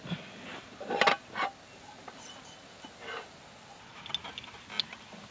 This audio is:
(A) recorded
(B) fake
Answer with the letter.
A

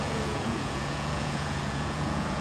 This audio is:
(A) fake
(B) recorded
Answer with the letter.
A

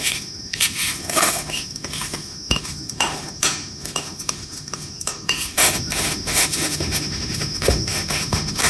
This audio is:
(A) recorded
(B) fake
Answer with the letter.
B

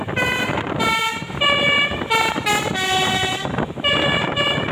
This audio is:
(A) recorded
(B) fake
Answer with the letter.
A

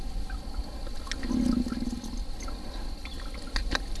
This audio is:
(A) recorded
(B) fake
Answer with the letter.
A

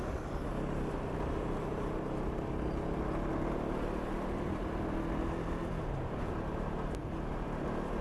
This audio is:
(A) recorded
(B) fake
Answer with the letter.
A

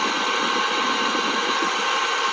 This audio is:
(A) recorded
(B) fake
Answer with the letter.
A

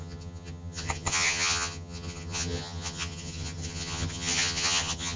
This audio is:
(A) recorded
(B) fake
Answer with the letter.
B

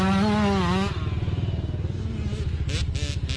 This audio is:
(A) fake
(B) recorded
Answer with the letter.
B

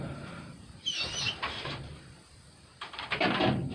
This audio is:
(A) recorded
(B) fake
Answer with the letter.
B